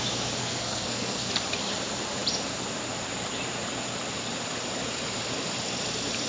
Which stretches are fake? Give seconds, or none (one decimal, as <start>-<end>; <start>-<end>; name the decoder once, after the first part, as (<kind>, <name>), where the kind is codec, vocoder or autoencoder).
0.4-1.3 (codec, SNAC)